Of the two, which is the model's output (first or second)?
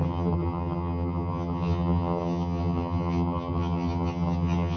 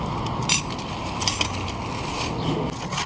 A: first